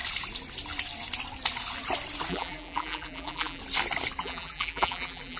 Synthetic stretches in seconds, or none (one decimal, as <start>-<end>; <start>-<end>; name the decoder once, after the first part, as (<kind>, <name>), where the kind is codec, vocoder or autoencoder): 2.3-3.6 (vocoder, BigVGAN v2); 4.2-5.4